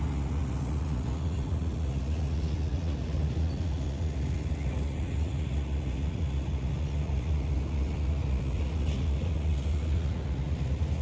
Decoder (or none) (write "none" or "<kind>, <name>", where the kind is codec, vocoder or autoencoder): vocoder, Vocos